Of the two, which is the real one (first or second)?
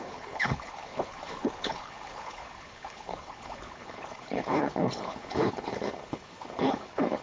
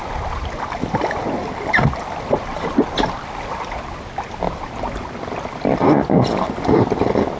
second